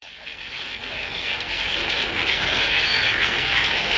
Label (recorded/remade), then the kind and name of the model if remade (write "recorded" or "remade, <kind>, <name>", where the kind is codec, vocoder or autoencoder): remade, codec, SNAC